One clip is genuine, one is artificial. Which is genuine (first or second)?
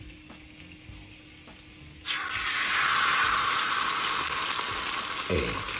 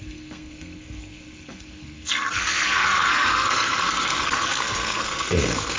first